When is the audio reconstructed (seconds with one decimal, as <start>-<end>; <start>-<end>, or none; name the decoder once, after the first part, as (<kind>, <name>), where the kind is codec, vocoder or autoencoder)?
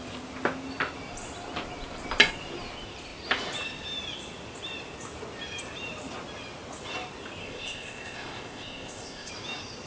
7.4-9.3 (codec, ZipCodec)